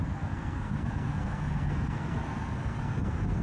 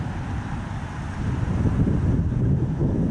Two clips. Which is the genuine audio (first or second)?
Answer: second